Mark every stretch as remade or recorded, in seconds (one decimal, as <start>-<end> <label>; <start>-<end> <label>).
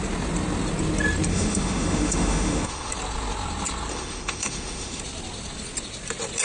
0.0-1.3 recorded; 1.3-2.9 remade; 2.9-3.9 recorded; 3.9-5.0 remade; 5.0-6.4 recorded